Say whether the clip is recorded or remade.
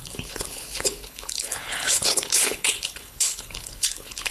remade